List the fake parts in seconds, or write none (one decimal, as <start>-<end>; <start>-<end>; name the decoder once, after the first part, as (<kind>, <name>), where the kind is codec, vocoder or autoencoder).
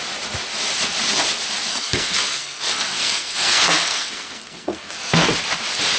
1.7-5.3 (codec, SNAC)